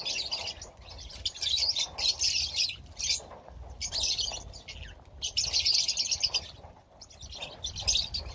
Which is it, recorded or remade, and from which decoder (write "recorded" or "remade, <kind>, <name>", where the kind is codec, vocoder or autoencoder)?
recorded